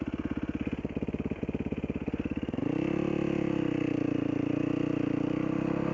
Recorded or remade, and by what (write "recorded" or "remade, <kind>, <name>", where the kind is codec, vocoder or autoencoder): recorded